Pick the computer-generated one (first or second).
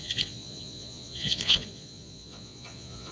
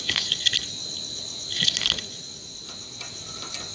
first